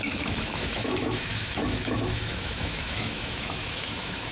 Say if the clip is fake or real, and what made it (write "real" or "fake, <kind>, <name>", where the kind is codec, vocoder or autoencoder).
fake, autoencoder, DAC-VAE